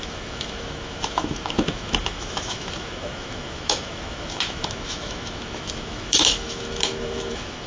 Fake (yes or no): yes